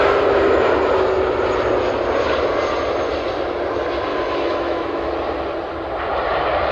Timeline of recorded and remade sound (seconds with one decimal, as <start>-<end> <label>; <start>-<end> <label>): 0.0-4.1 recorded; 4.1-5.1 remade; 5.1-6.7 recorded